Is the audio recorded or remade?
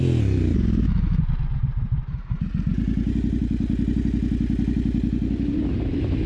recorded